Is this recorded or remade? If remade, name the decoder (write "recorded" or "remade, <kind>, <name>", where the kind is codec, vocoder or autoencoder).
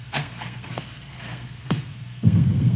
remade, codec, SNAC